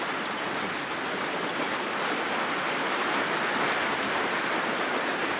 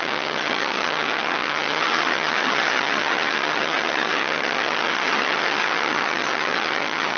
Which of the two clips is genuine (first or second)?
first